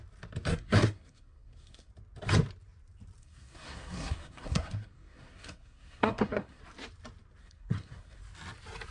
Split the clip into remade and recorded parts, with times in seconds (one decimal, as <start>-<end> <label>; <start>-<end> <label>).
0.0-0.5 recorded; 0.5-1.9 remade; 1.9-3.2 recorded; 3.2-6.6 remade; 6.6-7.4 recorded; 7.4-8.2 remade; 8.2-8.9 recorded